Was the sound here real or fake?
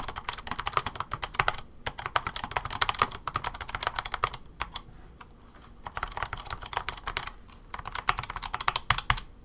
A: real